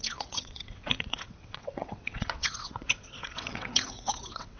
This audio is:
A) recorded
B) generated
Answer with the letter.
B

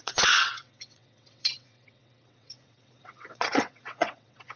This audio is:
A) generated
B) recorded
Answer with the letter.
A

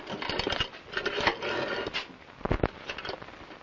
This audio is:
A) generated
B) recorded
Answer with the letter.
B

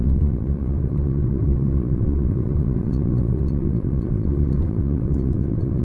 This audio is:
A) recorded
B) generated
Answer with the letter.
B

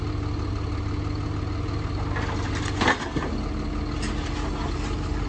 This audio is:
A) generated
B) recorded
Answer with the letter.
B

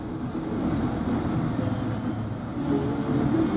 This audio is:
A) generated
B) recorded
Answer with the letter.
B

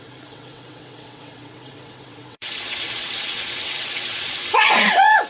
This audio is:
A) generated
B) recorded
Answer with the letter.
A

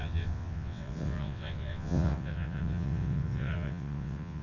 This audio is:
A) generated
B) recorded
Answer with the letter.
A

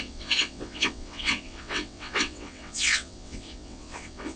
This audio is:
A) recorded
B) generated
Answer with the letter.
B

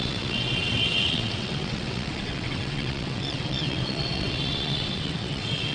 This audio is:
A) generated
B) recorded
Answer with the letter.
A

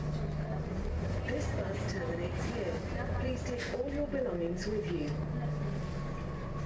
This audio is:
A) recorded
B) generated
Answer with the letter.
A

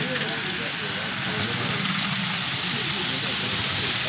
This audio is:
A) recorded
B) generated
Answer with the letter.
A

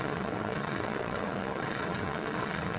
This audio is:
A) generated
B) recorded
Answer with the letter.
A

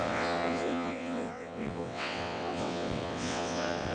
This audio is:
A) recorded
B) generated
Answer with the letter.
B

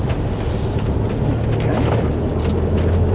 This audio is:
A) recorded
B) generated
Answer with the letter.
A